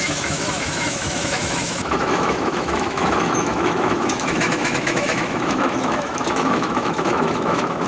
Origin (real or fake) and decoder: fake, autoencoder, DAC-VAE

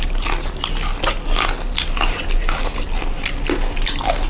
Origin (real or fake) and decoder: real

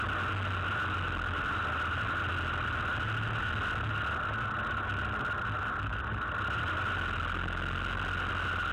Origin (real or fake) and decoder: real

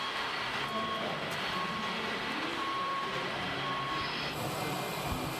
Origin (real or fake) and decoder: real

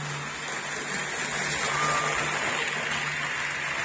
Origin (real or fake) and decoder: real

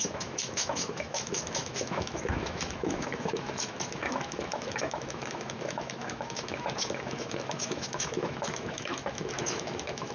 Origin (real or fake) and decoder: fake, autoencoder, DAC-VAE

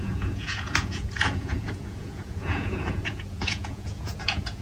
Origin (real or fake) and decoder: fake, vocoder, Vocos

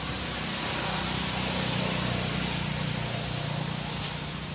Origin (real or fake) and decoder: real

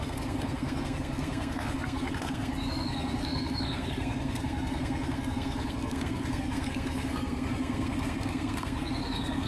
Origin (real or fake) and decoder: fake, codec, SNAC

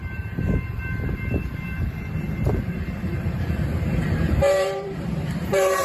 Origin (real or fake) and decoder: fake, vocoder, BigVGAN v2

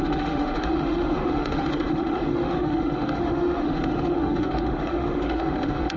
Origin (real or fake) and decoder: fake, autoencoder, DAC-VAE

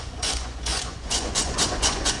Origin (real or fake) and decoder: fake, vocoder, Vocos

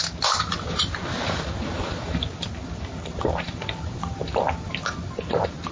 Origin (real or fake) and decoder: real